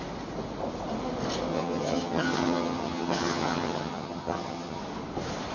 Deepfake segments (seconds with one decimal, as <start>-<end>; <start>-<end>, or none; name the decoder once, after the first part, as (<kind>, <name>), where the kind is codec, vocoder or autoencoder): 1.5-4.8 (vocoder, HiFi-GAN)